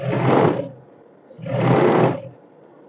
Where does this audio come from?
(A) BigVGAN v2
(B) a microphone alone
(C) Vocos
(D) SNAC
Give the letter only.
B